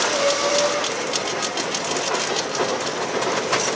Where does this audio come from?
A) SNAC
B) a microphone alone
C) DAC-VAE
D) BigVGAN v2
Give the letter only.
B